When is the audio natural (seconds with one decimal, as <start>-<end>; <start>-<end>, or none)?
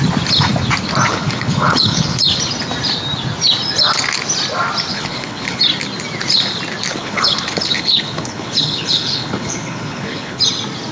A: 0.0-1.1; 2.2-4.9; 5.6-6.9; 10.4-10.9